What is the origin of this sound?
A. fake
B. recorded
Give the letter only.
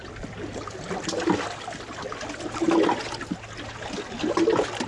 B